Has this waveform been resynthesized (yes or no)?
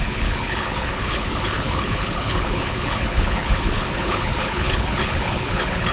yes